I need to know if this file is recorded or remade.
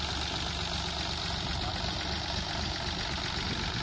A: recorded